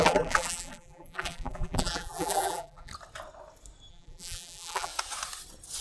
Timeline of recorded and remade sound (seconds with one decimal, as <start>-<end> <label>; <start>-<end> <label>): 0.0-2.9 remade; 2.9-3.9 recorded; 3.9-4.9 remade; 4.9-5.8 recorded